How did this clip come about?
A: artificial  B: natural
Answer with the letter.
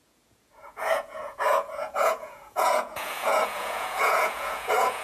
A